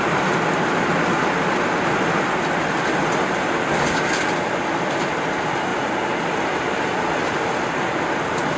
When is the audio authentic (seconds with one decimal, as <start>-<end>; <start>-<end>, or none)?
0.0-5.7; 7.3-8.6